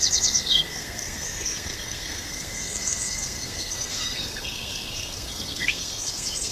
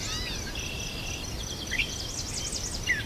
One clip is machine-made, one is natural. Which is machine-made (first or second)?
first